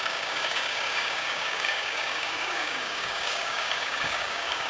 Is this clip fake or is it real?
fake